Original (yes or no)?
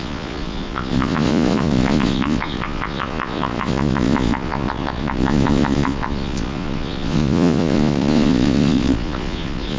no